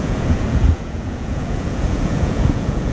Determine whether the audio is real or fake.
fake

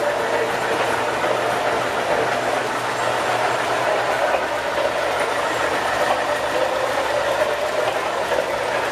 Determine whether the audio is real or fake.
real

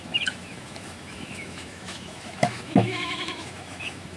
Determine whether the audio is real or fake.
fake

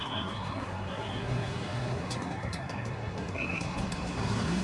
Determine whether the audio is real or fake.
fake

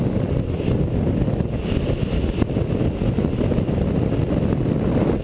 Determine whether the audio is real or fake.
real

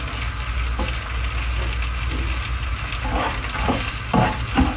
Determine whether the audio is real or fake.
real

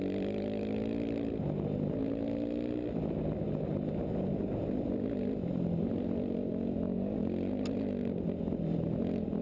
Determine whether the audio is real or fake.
real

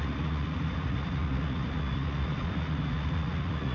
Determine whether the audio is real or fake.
fake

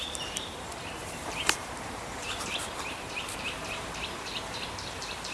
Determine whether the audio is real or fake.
fake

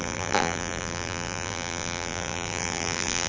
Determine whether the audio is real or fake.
fake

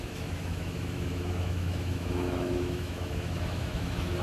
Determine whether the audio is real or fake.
fake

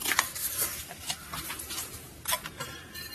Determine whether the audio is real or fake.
fake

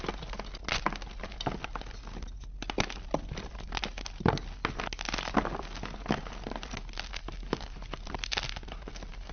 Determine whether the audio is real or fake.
real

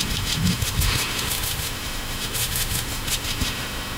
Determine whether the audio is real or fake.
fake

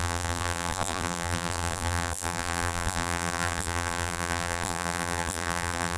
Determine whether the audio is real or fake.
fake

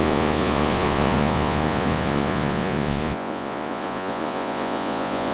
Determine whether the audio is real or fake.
fake